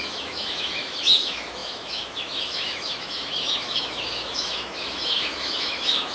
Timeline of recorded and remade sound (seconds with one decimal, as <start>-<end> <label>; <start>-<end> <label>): 0.0-6.1 remade